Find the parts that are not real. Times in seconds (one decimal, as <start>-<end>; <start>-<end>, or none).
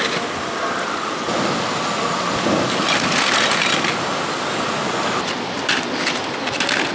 none